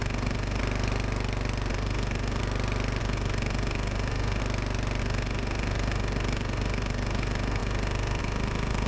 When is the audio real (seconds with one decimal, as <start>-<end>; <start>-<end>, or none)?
0.6-1.7; 2.4-3.0; 4.4-5.0